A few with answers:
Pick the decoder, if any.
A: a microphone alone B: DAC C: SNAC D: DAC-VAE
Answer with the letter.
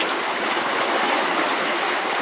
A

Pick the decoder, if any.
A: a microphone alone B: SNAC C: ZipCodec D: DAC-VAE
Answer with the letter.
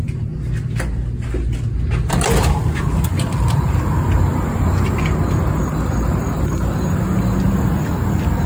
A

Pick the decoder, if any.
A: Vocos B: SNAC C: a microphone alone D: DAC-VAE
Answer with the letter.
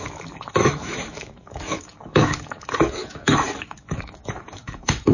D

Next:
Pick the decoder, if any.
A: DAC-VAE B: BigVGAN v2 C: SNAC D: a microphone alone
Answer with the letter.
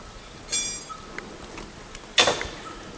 D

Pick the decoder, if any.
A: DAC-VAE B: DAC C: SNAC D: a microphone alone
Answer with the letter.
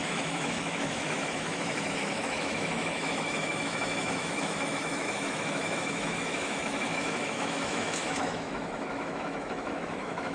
A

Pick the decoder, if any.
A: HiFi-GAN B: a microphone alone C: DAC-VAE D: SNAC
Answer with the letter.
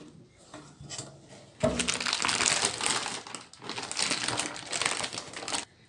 B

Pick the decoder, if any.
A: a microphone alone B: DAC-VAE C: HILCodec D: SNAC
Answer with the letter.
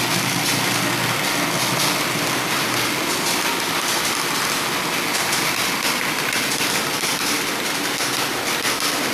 A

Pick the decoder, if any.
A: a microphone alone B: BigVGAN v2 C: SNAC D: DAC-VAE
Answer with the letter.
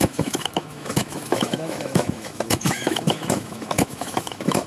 D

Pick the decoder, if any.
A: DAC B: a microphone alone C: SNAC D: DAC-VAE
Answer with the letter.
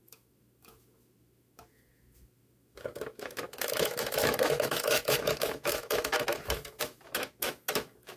D